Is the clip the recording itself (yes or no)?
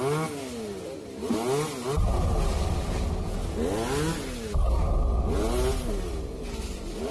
yes